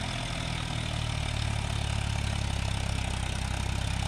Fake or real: real